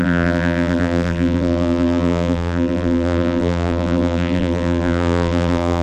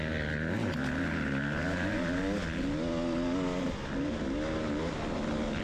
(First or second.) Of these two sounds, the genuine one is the second